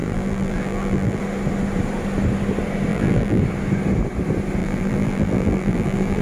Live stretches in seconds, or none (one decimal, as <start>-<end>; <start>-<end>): 1.2-2.9; 3.4-4.6